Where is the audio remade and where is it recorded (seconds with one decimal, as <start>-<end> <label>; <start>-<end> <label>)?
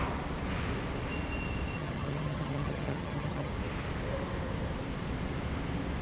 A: 0.0-1.8 recorded; 1.8-3.5 remade; 3.5-6.0 recorded